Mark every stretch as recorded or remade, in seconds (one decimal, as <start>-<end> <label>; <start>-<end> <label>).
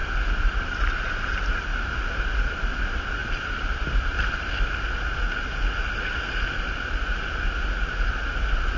0.0-0.8 remade; 0.8-3.2 recorded; 3.2-4.7 remade; 4.7-8.8 recorded